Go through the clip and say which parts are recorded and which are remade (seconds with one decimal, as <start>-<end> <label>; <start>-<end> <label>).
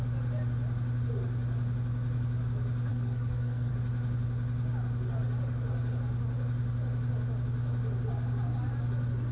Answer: 0.0-2.9 recorded; 2.9-3.7 remade; 3.7-9.3 recorded